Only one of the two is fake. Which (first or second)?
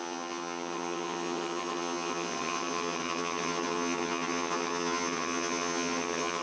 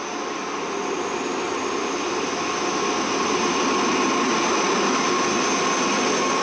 first